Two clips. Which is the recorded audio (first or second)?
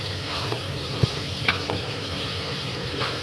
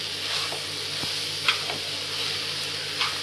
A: second